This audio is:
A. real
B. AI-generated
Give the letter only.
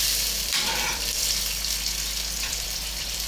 B